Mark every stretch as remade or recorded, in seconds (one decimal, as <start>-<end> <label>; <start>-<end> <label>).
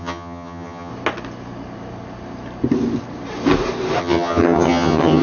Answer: 0.0-0.9 remade; 0.9-4.0 recorded; 4.0-5.2 remade